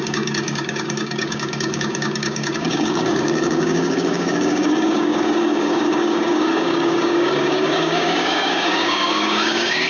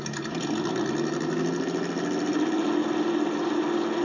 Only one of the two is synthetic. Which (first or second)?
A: first